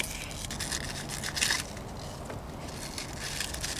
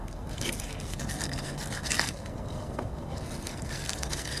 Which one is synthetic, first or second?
second